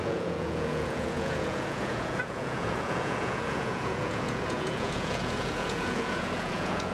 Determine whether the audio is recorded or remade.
remade